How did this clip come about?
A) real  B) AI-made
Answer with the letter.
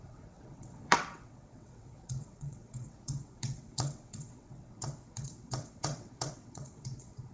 B